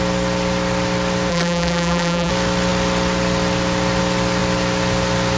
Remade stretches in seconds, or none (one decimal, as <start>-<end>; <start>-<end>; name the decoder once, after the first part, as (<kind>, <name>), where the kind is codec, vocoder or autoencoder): 1.3-2.3 (vocoder, BigVGAN v2)